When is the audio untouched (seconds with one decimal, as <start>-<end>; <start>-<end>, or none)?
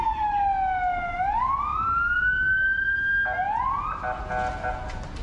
0.0-5.2